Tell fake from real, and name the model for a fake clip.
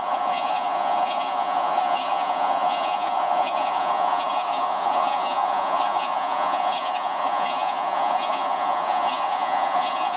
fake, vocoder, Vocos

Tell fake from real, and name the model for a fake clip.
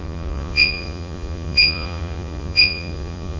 fake, vocoder, Vocos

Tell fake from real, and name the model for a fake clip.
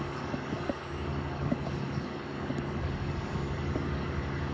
fake, codec, DAC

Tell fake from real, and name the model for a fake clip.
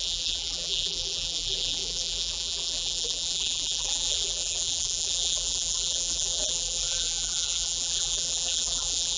fake, vocoder, BigVGAN v2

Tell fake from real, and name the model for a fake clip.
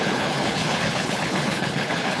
fake, codec, HILCodec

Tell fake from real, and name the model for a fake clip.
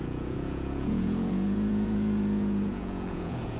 fake, vocoder, Vocos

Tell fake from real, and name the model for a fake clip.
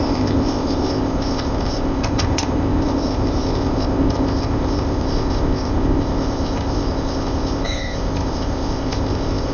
fake, codec, ZipCodec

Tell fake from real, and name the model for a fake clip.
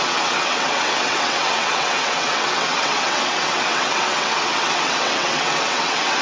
fake, vocoder, WaveNeXt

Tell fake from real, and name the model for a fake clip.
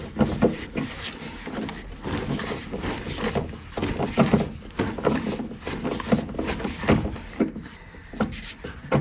real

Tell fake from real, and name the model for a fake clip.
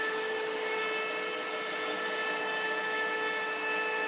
real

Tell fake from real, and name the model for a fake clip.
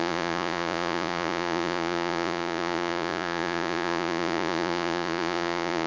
fake, vocoder, Vocos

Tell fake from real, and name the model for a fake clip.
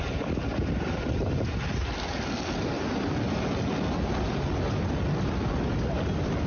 real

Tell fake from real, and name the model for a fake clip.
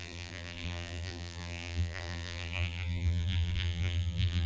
fake, vocoder, BigVGAN v2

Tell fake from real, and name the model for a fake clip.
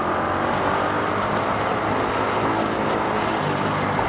real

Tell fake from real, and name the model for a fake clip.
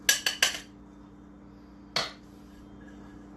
real